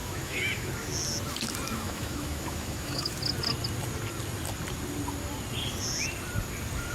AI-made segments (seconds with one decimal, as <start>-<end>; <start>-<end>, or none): 0.0-0.7; 1.7-3.2